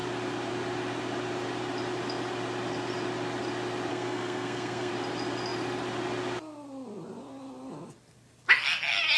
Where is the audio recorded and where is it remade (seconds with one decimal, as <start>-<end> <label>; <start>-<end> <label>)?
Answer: 0.0-3.9 recorded; 3.9-4.9 remade; 4.9-9.2 recorded